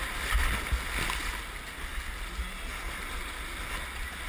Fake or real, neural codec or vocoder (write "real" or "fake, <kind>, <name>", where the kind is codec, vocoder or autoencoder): real